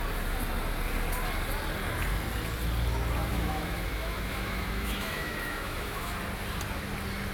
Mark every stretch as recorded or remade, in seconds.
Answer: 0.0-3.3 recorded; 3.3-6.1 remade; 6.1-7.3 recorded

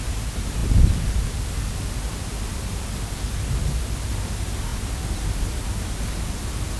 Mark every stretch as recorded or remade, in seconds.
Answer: 0.0-6.8 recorded

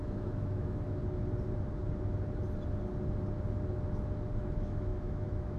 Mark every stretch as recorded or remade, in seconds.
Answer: 0.0-1.0 remade; 1.0-4.4 recorded; 4.4-5.6 remade

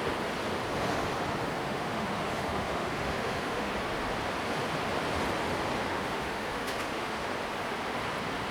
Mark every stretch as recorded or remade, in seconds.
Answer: 0.0-1.6 recorded; 1.6-3.7 remade; 3.7-5.9 recorded; 5.9-7.3 remade; 7.3-8.5 recorded

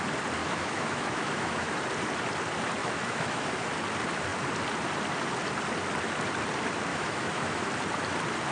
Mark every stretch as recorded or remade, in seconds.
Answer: 0.0-0.4 recorded; 0.4-1.7 remade; 1.7-2.8 recorded; 2.8-3.5 remade; 3.5-6.9 recorded; 6.9-7.7 remade; 7.7-8.5 recorded

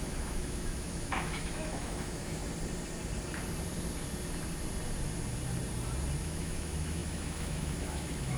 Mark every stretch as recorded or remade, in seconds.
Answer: 0.0-2.4 remade; 2.4-6.2 recorded; 6.2-8.4 remade